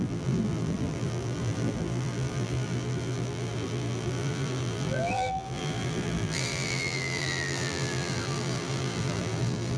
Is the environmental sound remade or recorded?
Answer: remade